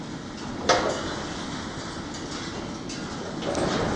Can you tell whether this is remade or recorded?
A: recorded